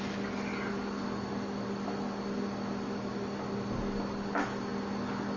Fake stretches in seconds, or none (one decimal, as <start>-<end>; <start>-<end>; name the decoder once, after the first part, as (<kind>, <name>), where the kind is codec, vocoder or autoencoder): none